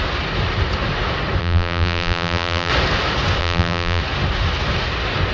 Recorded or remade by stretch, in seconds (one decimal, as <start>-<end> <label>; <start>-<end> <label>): 0.0-1.4 recorded; 1.4-2.7 remade; 2.7-3.4 recorded; 3.4-4.0 remade; 4.0-5.3 recorded